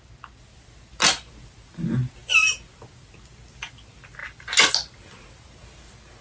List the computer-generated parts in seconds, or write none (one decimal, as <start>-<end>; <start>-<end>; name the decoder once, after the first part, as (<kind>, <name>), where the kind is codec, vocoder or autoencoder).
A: none